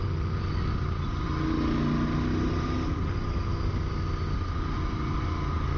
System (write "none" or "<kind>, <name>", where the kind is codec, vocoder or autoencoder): none